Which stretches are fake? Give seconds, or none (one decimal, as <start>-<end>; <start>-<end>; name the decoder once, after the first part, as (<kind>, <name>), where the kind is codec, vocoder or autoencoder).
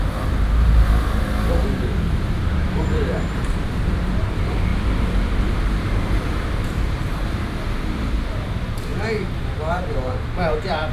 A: 0.0-4.7 (vocoder, BigVGAN v2); 5.3-8.9; 9.7-10.9